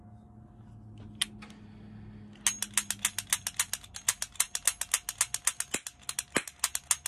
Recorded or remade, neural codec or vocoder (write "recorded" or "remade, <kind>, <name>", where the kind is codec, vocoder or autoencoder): recorded